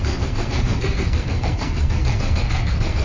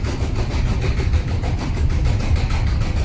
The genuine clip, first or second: second